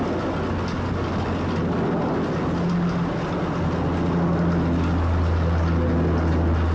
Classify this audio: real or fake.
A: real